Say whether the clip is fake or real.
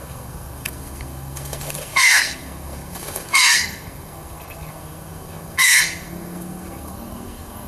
fake